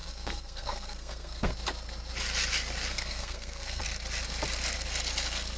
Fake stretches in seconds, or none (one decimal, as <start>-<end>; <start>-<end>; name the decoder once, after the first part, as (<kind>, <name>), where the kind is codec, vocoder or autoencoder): 0.0-1.5 (codec, SNAC); 2.9-3.8

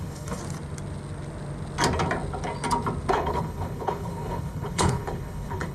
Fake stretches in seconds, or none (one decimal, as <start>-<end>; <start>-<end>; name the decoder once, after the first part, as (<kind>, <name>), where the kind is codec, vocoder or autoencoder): 0.0-0.4 (codec, HILCodec); 3.1-5.7

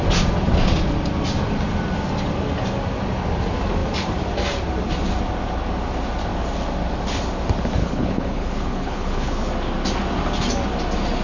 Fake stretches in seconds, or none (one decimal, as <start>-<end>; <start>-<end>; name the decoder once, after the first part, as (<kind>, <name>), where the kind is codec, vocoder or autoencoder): 7.8-9.5 (codec, HILCodec)